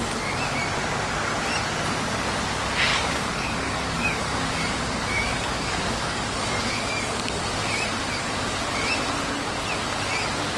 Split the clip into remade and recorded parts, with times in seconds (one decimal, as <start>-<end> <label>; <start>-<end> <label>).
0.0-2.9 recorded; 2.9-7.4 remade; 7.4-10.6 recorded

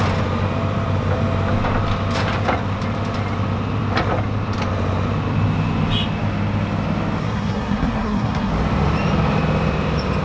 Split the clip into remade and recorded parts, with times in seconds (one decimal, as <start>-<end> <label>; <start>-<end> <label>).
0.0-7.2 recorded; 7.2-8.5 remade; 8.5-10.2 recorded

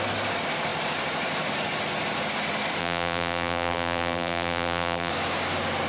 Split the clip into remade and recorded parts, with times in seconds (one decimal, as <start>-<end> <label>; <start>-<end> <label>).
0.0-2.8 recorded; 2.8-5.1 remade; 5.1-5.9 recorded

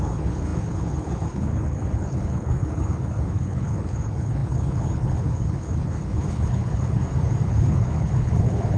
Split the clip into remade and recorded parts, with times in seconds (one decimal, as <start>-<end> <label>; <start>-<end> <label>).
0.0-7.0 remade; 7.0-7.5 recorded; 7.5-8.8 remade

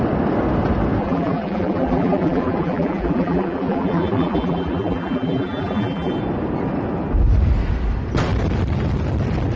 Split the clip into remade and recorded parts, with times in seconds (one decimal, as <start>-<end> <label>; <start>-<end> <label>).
0.0-1.0 recorded; 1.0-6.1 remade; 6.1-9.6 recorded